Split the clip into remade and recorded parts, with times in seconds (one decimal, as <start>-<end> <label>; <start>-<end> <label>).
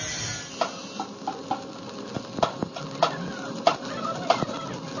0.0-5.0 recorded